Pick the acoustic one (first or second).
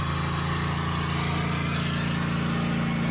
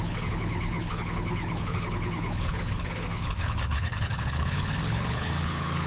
first